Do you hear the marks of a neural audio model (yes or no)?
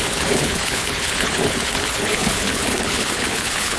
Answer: yes